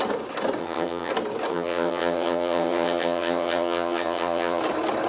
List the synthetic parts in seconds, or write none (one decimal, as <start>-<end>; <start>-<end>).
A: 0.6-1.1; 1.5-4.6